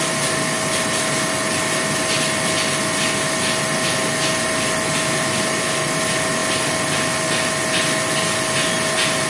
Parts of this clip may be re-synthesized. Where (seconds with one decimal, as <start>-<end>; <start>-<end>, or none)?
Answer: none